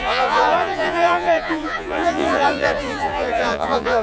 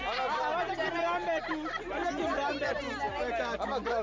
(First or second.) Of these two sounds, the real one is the second